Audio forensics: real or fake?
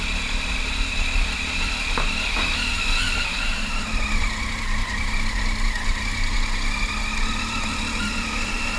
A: real